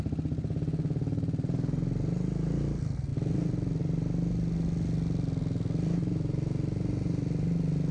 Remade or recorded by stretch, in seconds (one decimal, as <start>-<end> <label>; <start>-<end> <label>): 0.0-7.9 recorded